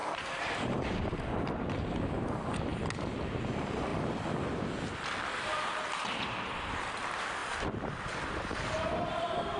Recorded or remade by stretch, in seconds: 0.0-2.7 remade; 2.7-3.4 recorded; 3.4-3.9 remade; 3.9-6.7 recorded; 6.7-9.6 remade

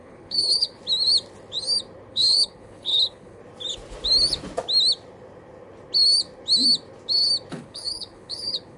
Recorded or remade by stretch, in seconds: 0.0-0.8 remade; 0.8-2.1 recorded; 2.1-3.4 remade; 3.4-7.5 recorded; 7.5-8.8 remade